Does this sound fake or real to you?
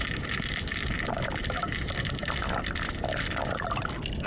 fake